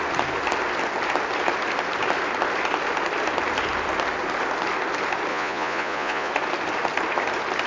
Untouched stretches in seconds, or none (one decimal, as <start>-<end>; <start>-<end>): 0.0-5.3; 6.3-7.7